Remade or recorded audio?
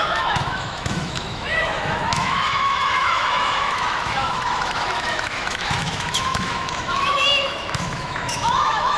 remade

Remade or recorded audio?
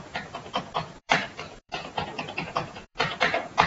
remade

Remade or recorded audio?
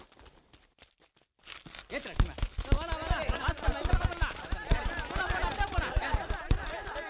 recorded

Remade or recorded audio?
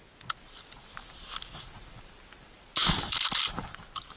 recorded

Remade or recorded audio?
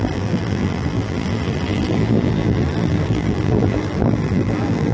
remade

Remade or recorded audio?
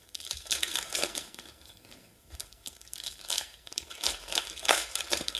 remade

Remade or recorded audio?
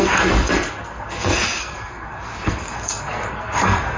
remade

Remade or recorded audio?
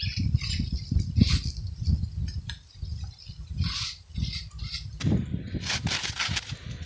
remade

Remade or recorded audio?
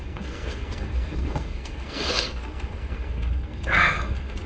remade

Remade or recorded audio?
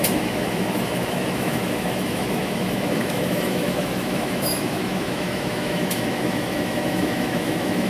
remade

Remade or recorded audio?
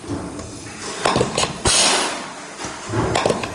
recorded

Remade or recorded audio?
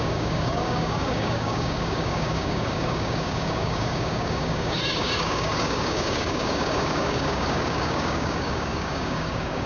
remade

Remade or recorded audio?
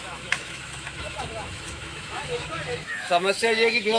remade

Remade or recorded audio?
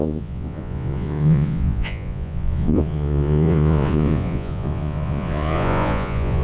remade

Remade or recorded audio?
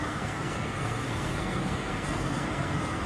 remade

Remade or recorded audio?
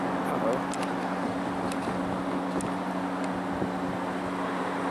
recorded